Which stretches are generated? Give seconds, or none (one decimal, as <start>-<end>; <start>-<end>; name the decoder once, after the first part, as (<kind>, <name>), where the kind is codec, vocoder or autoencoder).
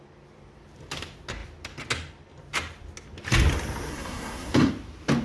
3.9-4.7 (codec, SNAC)